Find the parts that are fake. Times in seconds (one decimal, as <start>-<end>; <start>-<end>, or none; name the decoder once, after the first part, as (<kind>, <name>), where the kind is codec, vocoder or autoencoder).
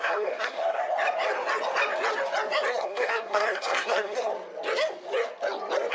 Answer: 0.0-0.8 (codec, SNAC); 2.7-4.3